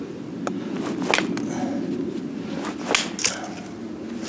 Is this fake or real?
real